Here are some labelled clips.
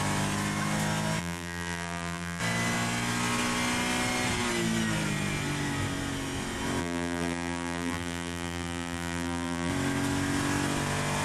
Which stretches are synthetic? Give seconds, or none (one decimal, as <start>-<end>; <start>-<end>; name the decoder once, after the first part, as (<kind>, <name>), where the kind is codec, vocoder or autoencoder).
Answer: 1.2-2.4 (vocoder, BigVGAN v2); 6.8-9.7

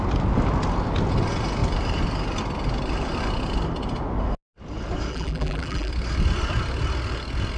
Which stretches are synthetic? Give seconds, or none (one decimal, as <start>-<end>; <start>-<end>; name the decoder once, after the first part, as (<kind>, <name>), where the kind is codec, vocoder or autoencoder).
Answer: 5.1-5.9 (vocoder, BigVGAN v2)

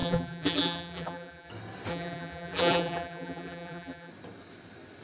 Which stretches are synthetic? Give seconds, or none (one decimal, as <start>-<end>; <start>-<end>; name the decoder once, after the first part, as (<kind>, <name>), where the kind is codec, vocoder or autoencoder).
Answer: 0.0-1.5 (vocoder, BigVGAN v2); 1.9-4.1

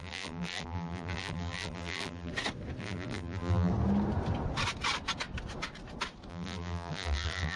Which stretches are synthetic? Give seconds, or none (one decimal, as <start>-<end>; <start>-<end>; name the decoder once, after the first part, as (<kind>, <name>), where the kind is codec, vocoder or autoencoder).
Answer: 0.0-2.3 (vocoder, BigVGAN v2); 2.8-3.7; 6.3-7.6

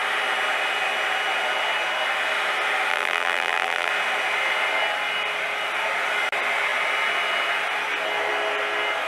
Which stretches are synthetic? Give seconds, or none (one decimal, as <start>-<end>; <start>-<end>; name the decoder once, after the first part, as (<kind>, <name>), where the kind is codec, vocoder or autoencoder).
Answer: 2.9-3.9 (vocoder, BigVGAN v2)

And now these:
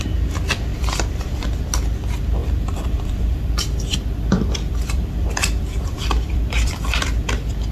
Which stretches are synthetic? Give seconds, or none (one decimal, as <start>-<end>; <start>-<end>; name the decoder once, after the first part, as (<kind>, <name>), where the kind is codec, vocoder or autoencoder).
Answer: 0.7-1.6 (vocoder, BigVGAN v2); 2.4-7.0

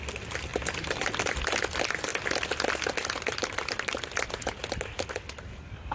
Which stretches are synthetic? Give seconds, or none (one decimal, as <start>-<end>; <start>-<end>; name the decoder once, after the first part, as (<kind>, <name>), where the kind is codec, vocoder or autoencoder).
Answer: 0.5-1.2 (vocoder, BigVGAN v2); 3.3-4.6